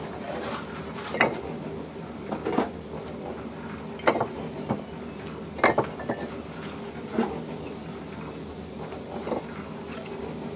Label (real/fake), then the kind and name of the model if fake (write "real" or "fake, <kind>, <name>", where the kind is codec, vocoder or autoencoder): real